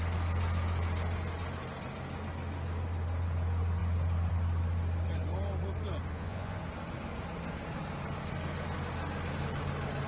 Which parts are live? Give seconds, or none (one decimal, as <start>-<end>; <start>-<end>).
0.0-6.1; 6.6-10.1